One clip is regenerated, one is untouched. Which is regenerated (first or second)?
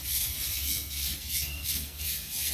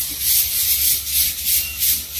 first